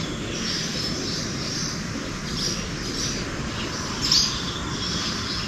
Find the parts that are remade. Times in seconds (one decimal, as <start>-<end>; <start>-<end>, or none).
0.7-1.4